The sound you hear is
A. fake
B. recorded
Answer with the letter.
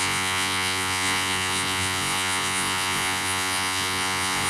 A